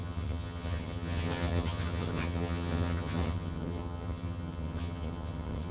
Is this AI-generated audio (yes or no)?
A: yes